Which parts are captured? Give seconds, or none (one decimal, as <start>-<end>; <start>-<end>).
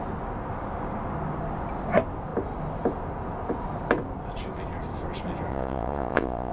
0.0-5.5